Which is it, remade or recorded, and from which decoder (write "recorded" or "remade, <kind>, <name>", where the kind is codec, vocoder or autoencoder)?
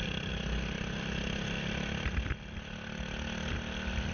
recorded